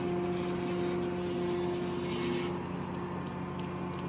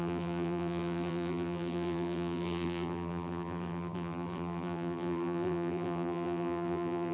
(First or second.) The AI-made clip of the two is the second